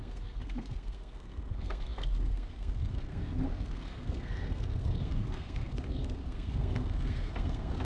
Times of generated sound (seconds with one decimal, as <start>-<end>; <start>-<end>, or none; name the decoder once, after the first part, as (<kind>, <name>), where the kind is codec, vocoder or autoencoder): 0.0-7.8 (codec, SNAC)